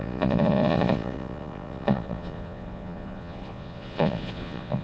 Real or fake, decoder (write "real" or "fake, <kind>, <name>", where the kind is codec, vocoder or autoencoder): fake, vocoder, Vocos